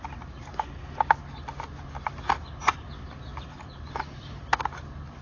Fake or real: real